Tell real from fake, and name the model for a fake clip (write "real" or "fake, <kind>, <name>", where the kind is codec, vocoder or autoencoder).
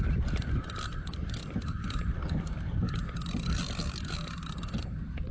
real